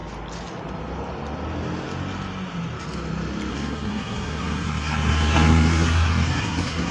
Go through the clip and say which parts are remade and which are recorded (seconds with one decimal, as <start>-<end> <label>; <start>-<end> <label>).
0.0-3.5 recorded; 3.5-6.9 remade